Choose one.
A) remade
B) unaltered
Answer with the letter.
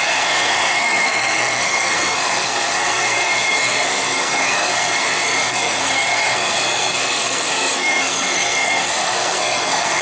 A